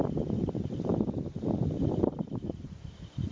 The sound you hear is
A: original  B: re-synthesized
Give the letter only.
A